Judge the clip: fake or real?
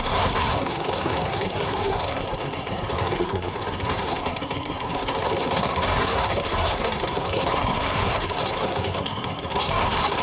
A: fake